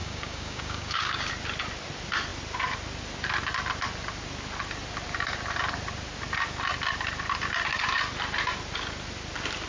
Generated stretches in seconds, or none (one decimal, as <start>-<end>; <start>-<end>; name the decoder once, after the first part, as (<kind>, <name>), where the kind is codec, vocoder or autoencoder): 0.0-1.3 (codec, DAC)